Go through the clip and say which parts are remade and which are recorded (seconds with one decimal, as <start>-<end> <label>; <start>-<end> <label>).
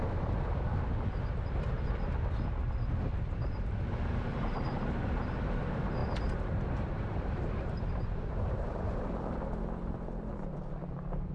0.0-4.3 recorded; 4.3-5.0 remade; 5.0-6.0 recorded; 6.0-9.1 remade; 9.1-11.3 recorded